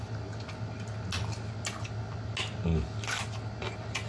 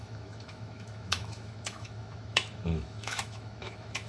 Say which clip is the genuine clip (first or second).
first